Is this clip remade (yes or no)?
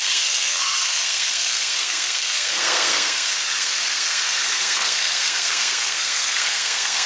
yes